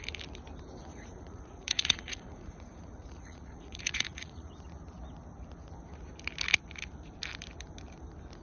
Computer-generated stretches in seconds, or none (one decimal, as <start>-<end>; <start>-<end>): 0.9-4.5